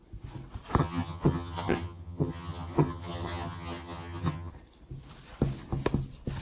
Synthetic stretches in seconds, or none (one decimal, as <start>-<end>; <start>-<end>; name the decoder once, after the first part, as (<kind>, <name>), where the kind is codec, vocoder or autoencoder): 0.8-4.5 (vocoder, HiFi-GAN)

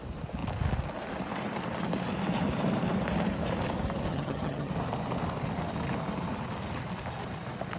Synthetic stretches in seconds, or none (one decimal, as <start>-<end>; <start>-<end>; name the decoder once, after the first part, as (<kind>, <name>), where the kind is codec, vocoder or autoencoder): 4.1-4.7 (vocoder, HiFi-GAN)